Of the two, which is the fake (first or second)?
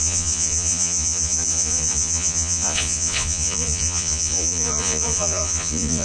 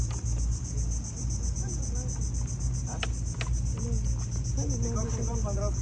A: first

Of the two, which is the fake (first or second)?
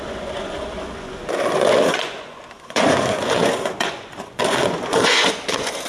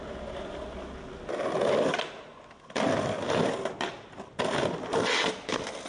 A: first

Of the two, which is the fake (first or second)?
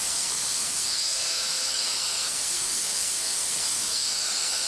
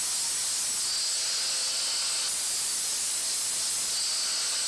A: first